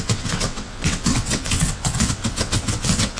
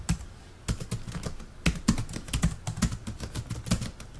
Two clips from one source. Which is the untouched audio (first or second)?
second